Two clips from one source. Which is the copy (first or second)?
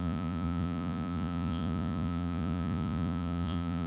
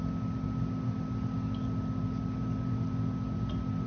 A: first